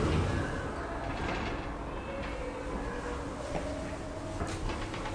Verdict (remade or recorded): recorded